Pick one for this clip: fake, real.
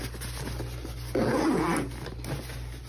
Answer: real